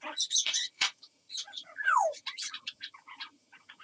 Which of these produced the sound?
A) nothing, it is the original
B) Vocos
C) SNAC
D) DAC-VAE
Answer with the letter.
B